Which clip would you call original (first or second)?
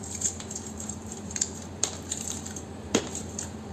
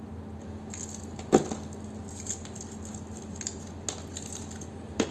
second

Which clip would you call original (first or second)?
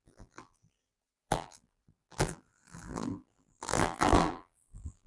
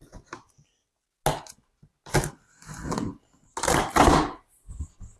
second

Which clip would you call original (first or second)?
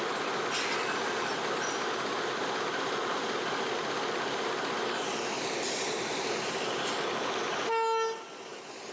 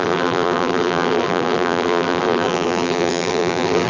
first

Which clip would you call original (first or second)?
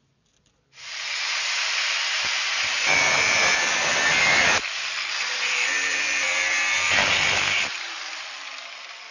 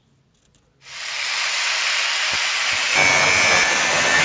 second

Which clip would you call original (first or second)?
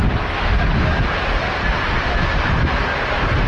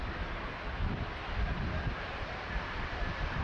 first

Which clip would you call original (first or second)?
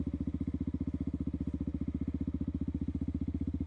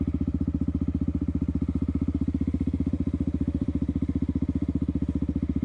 first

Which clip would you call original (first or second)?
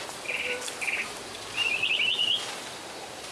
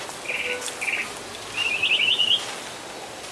second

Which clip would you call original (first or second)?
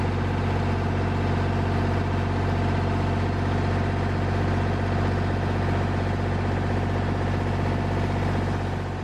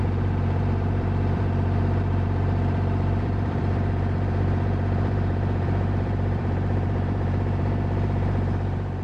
first